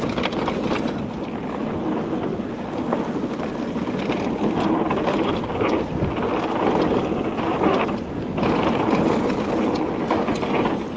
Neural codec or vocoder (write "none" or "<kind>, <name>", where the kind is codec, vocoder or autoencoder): none